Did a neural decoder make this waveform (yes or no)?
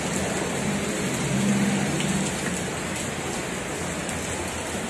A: no